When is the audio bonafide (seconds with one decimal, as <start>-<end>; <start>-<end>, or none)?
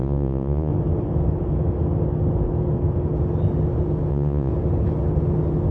0.7-4.1; 4.5-5.7